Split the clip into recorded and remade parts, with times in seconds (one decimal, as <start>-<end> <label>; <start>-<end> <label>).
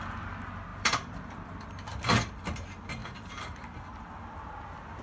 0.0-0.7 recorded; 0.7-1.5 remade; 1.5-3.0 recorded; 3.0-4.0 remade; 4.0-5.0 recorded